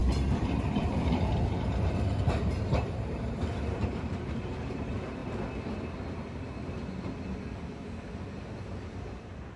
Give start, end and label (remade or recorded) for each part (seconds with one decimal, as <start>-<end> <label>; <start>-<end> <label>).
0.0-5.2 remade; 5.2-9.2 recorded; 9.2-9.6 remade